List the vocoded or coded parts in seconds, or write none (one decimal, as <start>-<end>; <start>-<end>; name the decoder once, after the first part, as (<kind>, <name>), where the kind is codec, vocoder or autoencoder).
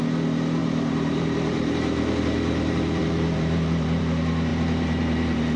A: 0.6-4.0 (vocoder, BigVGAN v2); 4.5-5.6